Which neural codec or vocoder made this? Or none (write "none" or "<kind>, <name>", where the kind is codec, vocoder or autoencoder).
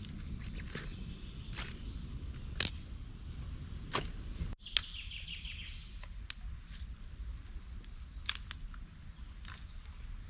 none